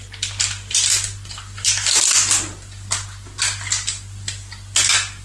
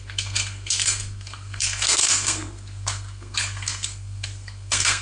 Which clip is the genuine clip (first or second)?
first